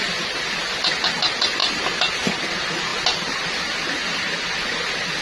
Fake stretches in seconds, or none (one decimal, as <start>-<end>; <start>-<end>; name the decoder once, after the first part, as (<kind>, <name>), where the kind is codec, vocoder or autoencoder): none